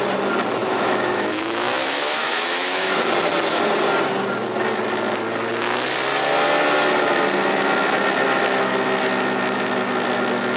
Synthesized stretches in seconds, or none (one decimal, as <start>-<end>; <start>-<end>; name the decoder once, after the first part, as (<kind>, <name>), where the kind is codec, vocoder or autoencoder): 0.6-3.1 (autoencoder, DAC-VAE)